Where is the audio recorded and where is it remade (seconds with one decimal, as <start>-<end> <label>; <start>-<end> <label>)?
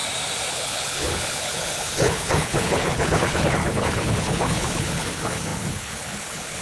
0.0-0.5 recorded; 0.5-6.6 remade